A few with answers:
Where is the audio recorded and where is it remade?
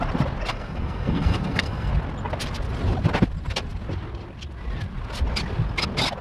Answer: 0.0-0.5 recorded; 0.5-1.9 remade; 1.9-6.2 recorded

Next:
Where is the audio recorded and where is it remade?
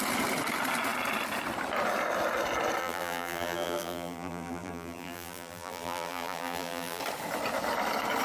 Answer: 0.0-2.8 recorded; 2.8-7.0 remade; 7.0-8.2 recorded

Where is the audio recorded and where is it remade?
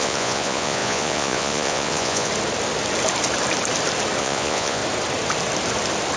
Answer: 0.0-2.3 remade; 2.3-4.2 recorded; 4.2-4.8 remade; 4.8-6.2 recorded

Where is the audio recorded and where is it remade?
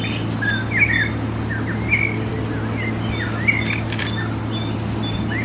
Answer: 0.0-5.4 recorded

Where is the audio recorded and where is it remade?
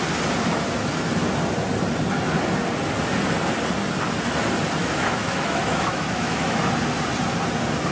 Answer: 0.0-4.8 recorded; 4.8-6.6 remade; 6.6-7.9 recorded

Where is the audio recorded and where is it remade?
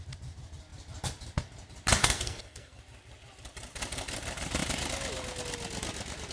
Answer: 0.0-2.0 recorded; 2.0-2.8 remade; 2.8-6.3 recorded